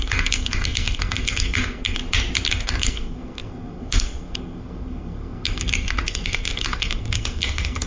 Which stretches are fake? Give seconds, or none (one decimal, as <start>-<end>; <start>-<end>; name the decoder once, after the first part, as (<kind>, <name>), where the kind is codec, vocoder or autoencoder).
0.0-2.0 (codec, SNAC); 2.5-7.9